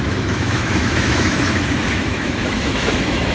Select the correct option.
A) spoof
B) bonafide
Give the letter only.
A